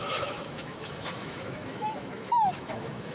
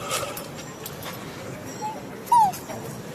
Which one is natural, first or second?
second